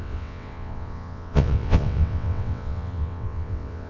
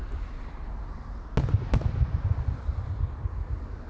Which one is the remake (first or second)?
first